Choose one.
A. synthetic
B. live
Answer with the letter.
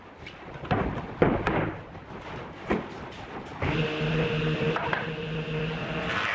B